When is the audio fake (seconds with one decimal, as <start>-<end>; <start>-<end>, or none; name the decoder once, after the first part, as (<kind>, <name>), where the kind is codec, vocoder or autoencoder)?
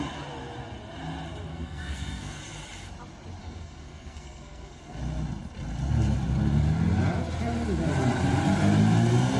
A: 1.5-2.4 (codec, SNAC); 3.4-5.0